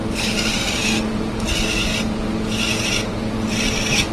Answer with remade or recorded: recorded